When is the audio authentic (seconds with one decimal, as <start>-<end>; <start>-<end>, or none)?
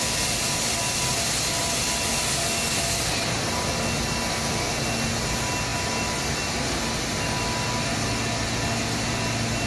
0.0-9.7